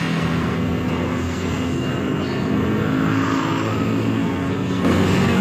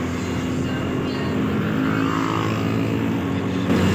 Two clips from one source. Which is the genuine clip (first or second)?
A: second